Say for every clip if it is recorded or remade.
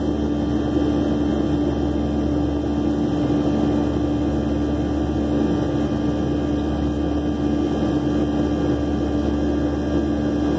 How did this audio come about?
recorded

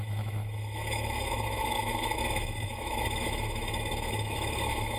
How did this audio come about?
remade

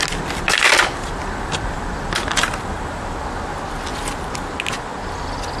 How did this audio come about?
recorded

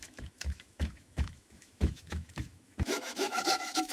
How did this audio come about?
remade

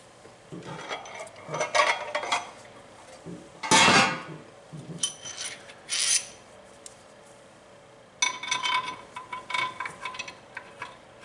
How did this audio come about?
recorded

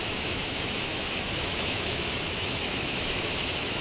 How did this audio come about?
remade